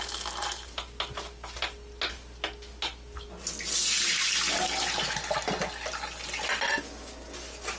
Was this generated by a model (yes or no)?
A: no